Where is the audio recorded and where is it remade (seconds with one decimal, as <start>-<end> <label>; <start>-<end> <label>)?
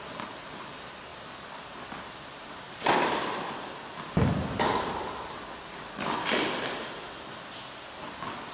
0.0-8.5 recorded